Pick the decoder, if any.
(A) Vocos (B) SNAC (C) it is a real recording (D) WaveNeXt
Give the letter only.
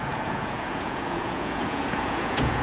A